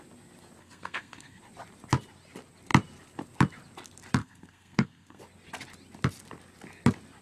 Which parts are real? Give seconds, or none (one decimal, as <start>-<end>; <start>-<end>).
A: 0.0-0.6; 1.4-4.2; 5.2-7.2